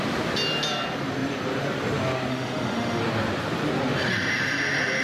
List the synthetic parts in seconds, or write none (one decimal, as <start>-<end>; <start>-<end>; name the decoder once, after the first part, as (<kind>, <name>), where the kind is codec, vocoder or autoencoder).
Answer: 2.3-3.0 (autoencoder, DAC-VAE)